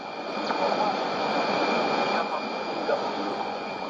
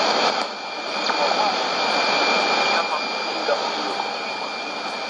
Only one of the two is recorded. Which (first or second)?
second